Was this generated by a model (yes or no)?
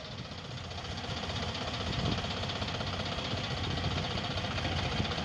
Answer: no